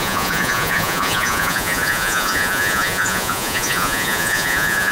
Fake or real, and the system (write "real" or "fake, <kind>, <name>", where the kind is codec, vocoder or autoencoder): fake, vocoder, Vocos